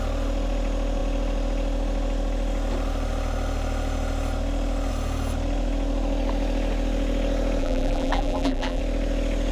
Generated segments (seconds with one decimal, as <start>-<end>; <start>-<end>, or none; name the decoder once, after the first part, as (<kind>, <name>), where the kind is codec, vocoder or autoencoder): 7.6-8.8 (vocoder, BigVGAN v2)